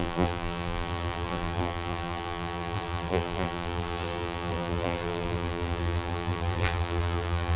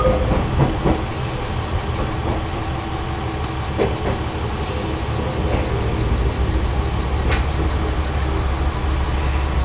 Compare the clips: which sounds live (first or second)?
second